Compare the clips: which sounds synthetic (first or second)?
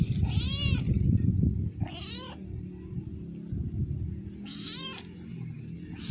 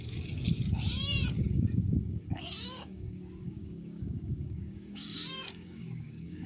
second